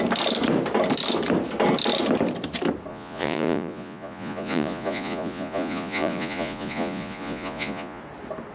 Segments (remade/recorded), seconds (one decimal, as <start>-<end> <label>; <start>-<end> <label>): 0.0-2.9 recorded; 2.9-8.0 remade; 8.0-8.5 recorded